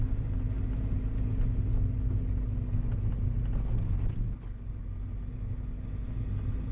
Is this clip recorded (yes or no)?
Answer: yes